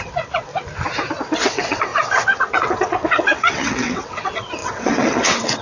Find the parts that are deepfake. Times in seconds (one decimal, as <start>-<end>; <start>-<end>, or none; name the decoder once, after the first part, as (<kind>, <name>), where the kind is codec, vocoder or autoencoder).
0.0-0.5 (vocoder, WaveNeXt); 1.2-5.6